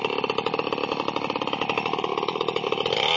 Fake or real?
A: real